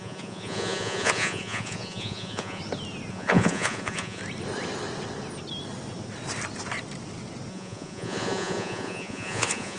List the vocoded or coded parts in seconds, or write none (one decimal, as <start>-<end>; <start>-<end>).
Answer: 0.0-2.6; 3.1-4.2; 7.5-9.8